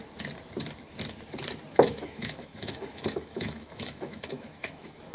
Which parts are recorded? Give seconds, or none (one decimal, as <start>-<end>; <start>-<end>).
0.0-1.7

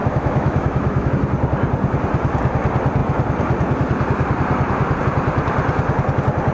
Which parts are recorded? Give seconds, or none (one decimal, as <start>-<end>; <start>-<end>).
1.1-6.5